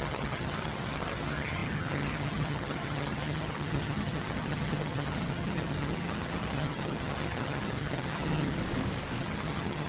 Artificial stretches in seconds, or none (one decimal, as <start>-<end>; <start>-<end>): 0.0-8.6; 9.2-9.9